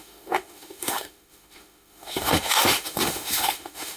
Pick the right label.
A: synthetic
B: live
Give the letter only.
A